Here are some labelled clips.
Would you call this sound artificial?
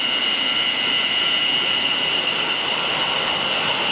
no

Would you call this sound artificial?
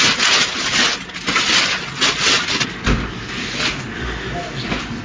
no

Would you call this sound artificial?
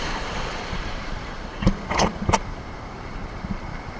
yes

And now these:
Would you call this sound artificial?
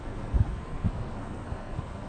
yes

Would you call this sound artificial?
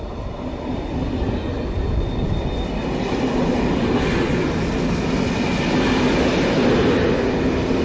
no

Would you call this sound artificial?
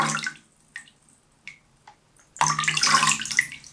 no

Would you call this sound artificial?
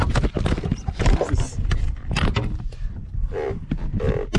no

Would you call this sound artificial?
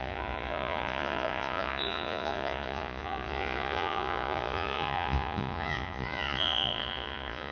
yes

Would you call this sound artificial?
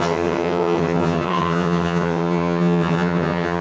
yes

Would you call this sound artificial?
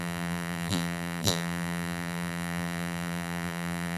yes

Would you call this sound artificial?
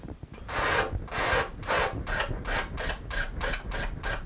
no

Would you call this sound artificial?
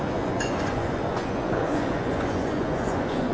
yes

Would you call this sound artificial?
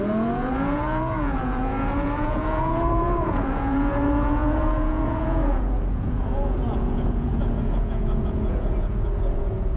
yes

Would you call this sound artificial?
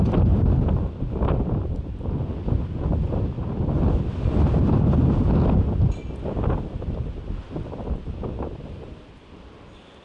no